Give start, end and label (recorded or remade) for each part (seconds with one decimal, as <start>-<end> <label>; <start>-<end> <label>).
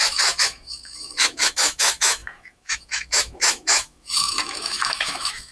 0.0-5.5 remade